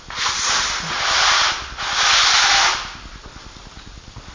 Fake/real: real